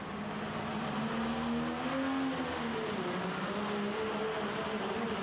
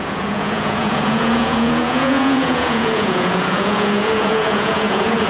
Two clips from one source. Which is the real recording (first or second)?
first